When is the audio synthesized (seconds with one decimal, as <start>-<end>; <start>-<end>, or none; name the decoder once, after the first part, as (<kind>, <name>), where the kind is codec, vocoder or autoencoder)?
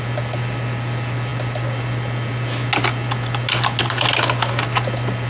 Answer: none